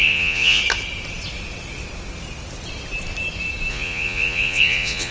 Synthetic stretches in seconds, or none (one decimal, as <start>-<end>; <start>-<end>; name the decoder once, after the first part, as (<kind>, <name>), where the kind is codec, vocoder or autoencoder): 0.0-0.6 (vocoder, Vocos); 3.7-5.1